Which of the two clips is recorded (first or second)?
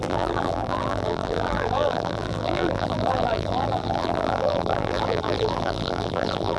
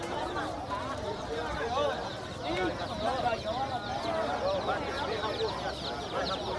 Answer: second